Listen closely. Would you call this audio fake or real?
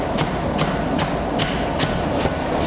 real